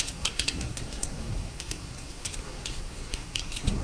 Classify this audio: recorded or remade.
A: remade